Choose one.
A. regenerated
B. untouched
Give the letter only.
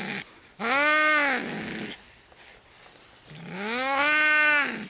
B